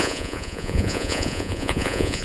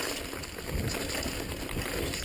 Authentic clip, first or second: second